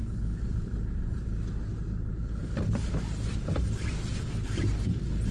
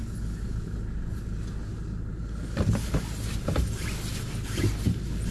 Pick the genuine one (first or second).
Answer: second